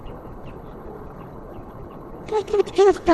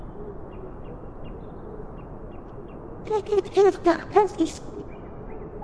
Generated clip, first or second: first